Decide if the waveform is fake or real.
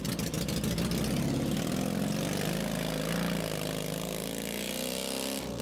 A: real